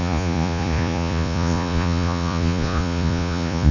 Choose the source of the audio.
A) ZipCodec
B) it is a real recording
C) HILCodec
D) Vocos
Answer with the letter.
D